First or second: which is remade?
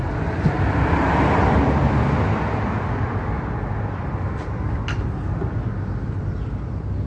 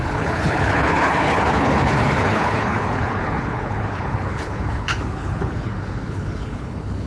second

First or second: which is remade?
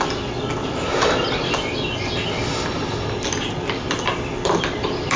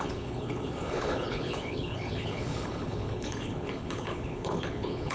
second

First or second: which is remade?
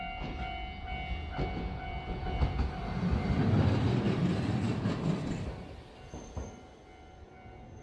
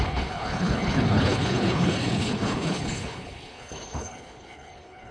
second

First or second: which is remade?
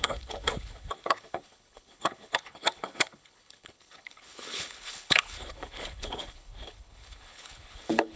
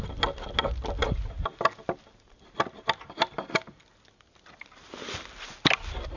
first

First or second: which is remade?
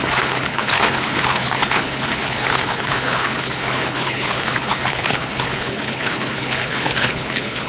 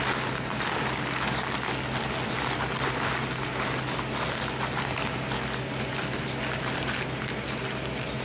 first